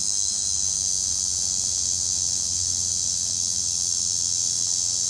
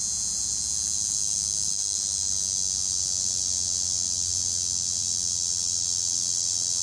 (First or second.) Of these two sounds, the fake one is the first